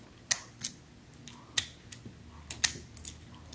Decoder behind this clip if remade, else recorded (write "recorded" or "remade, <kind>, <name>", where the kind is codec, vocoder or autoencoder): recorded